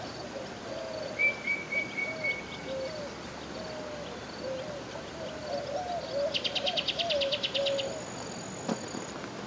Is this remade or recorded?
recorded